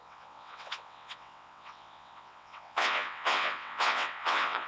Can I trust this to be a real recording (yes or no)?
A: no